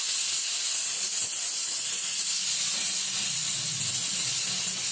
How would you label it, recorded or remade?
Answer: recorded